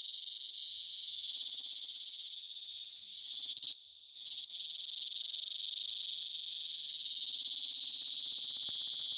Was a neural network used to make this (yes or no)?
no